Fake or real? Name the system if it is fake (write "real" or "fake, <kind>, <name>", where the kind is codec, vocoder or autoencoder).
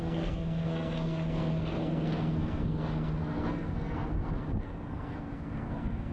fake, codec, SNAC